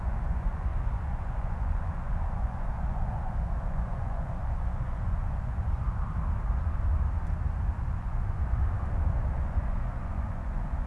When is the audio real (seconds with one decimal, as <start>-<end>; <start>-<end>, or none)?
5.8-7.9; 8.6-9.4